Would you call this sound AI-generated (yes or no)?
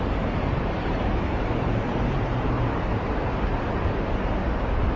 yes